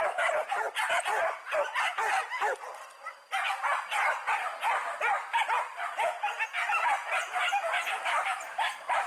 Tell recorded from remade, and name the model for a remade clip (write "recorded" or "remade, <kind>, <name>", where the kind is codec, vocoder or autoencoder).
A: recorded